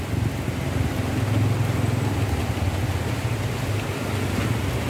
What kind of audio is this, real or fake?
real